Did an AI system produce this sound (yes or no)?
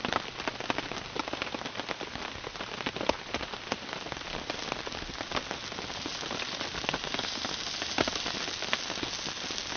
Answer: no